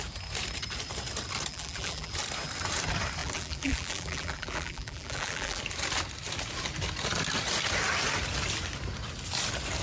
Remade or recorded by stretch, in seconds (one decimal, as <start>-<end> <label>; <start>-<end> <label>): 0.0-1.5 recorded; 1.5-2.1 remade; 2.1-3.2 recorded; 3.2-5.6 remade; 5.6-9.8 recorded